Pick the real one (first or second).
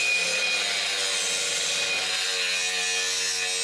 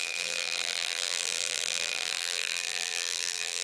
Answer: first